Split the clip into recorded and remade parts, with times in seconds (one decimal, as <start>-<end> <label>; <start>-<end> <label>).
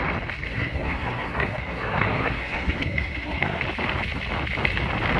0.0-0.5 recorded; 0.5-3.6 remade; 3.6-5.2 recorded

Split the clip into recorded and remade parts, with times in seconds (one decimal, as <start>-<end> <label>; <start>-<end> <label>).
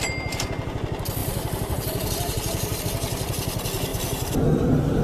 0.0-1.2 recorded; 1.2-2.8 remade; 2.8-3.9 recorded; 3.9-4.4 remade; 4.4-5.0 recorded